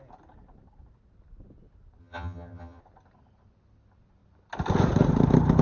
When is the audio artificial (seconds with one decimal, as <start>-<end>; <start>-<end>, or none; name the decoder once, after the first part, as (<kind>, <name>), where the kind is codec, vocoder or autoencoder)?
2.0-2.8 (vocoder, HiFi-GAN)